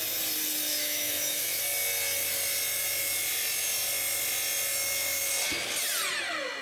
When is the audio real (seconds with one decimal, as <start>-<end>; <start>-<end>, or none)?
0.0-0.7; 1.6-6.6